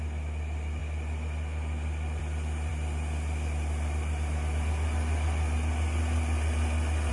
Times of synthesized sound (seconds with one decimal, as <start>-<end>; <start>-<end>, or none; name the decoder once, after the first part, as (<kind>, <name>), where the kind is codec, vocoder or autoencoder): none